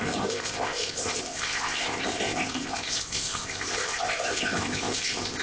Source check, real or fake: fake